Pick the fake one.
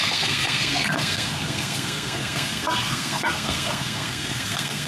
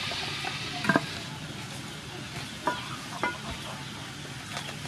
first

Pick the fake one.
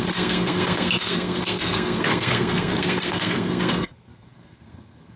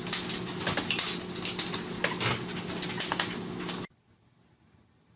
first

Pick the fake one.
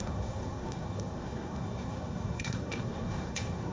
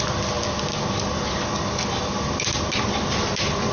first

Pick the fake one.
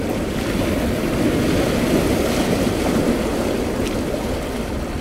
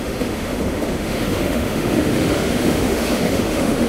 second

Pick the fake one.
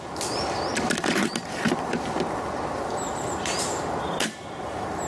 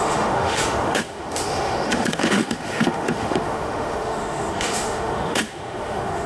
second